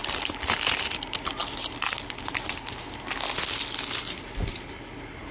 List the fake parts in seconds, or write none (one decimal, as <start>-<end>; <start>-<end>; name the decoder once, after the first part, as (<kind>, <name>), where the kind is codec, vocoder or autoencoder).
none